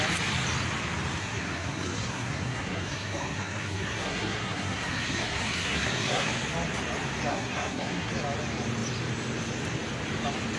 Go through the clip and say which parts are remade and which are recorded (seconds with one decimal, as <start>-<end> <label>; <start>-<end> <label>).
0.0-1.2 recorded; 1.2-6.3 remade; 6.3-7.3 recorded; 7.3-8.1 remade; 8.1-10.6 recorded